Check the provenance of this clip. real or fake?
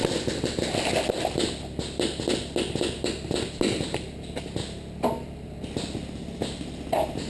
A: real